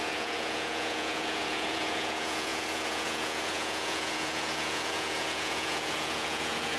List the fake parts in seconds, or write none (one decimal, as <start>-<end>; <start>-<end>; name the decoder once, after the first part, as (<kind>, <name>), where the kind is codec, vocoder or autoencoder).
0.0-6.8 (vocoder, Vocos)